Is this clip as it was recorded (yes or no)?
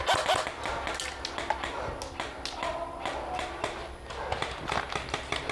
yes